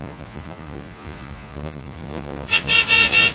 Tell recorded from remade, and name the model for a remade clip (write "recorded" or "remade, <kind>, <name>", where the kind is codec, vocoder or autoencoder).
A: remade, vocoder, Vocos